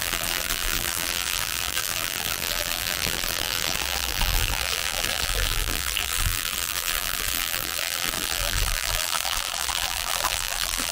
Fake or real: fake